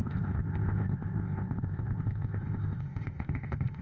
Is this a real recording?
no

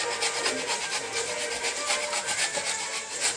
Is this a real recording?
yes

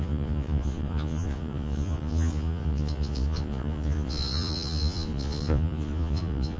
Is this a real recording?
no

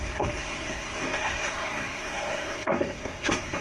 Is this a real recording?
no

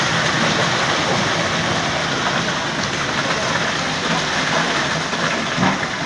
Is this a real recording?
yes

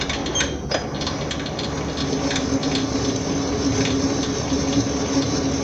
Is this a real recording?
yes